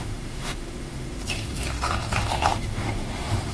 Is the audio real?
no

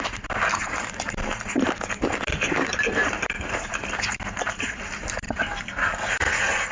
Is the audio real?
yes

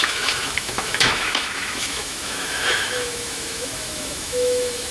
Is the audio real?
no